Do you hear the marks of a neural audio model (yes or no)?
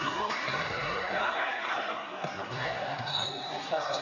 yes